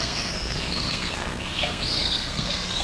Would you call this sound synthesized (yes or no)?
yes